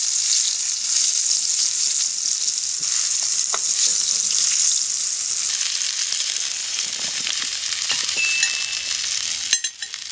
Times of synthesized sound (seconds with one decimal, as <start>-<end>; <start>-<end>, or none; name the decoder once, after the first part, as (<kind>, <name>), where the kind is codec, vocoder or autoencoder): 6.6-8.3 (vocoder, BigVGAN v2)